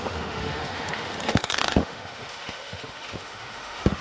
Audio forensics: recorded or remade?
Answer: remade